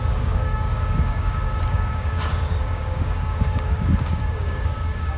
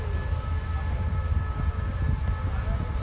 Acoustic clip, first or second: second